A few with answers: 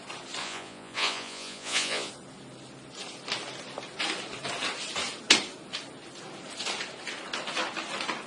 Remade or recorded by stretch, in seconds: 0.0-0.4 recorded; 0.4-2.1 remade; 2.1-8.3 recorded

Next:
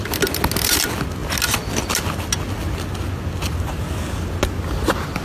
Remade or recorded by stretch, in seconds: 0.0-5.2 recorded

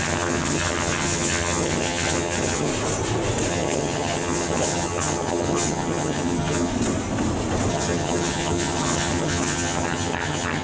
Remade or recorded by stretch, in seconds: 0.0-2.7 remade; 2.7-3.5 recorded; 3.5-6.7 remade; 6.7-7.7 recorded; 7.7-10.6 remade

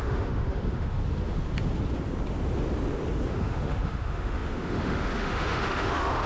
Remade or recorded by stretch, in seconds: 0.0-1.0 remade; 1.0-3.3 recorded; 3.3-6.3 remade